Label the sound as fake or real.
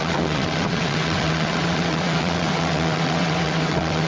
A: fake